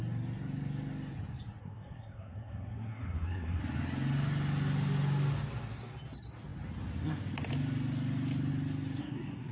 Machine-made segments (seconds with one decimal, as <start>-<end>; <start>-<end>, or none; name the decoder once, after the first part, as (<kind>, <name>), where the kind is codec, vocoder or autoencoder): 1.6-3.6 (codec, SNAC); 9.0-9.5